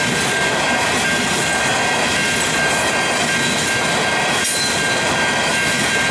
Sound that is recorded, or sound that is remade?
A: recorded